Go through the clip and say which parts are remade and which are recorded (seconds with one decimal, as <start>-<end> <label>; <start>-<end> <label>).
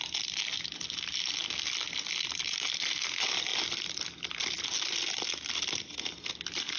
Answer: 0.0-6.8 recorded